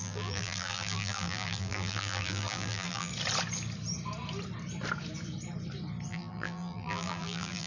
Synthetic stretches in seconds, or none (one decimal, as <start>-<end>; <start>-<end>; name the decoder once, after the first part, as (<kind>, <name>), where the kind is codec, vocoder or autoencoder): 0.0-3.1 (vocoder, BigVGAN v2); 6.1-7.7